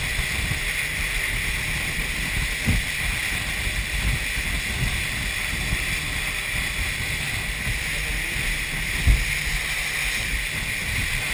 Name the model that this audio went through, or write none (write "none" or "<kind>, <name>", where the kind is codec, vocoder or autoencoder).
none